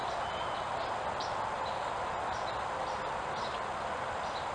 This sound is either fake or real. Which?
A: real